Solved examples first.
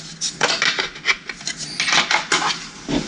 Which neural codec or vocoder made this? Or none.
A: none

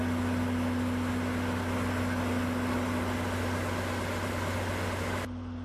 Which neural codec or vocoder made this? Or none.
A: none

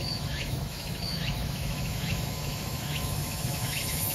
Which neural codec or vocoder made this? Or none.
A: autoencoder, DAC-VAE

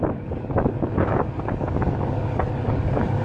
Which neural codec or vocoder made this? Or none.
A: codec, DAC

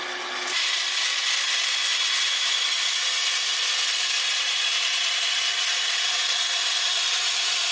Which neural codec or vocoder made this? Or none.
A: none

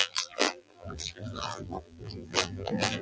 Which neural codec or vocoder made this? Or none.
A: vocoder, BigVGAN v2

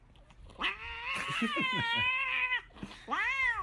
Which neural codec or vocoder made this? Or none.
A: none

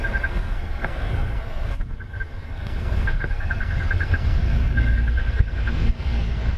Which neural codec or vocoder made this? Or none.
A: codec, SNAC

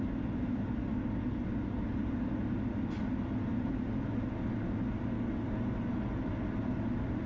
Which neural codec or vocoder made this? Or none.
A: none